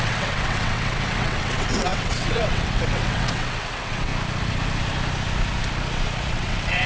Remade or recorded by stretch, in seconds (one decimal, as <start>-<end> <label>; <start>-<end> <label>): 0.0-4.1 remade; 4.1-6.3 recorded; 6.3-6.9 remade